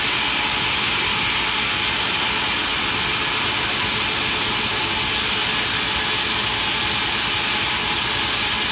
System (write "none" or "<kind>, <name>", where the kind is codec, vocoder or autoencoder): none